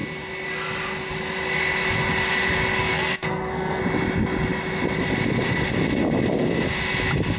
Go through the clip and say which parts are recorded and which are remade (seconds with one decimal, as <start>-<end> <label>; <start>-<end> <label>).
0.0-2.8 recorded; 2.8-3.8 remade; 3.8-7.4 recorded